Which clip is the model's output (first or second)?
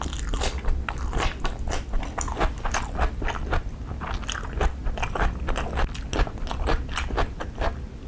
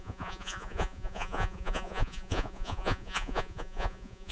second